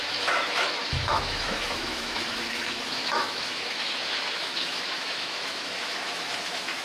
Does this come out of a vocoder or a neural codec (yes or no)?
yes